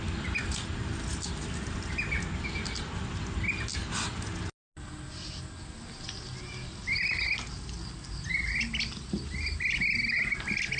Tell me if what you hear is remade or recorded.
recorded